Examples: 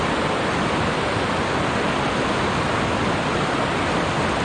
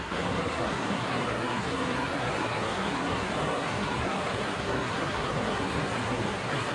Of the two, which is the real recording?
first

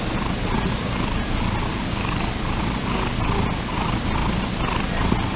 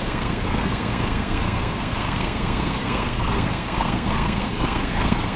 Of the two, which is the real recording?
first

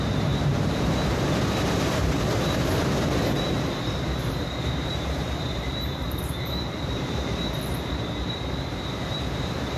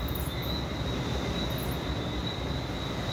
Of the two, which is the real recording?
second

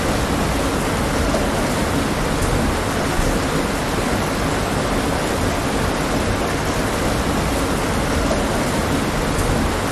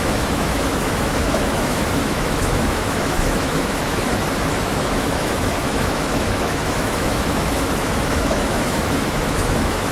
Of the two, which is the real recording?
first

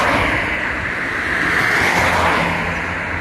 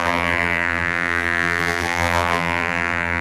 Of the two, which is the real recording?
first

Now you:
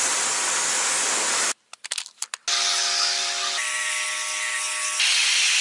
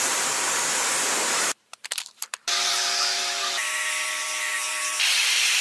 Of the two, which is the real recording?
first